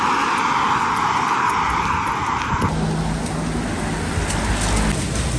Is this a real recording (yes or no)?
yes